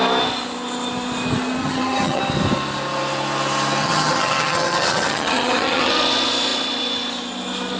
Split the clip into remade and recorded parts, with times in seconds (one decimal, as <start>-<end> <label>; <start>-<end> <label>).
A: 0.0-1.6 recorded; 1.6-2.2 remade; 2.2-3.8 recorded; 3.8-5.9 remade; 5.9-7.8 recorded